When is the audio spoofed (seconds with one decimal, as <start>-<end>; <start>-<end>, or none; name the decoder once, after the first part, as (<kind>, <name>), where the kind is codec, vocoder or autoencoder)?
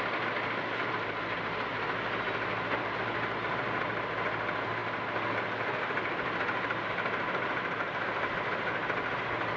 none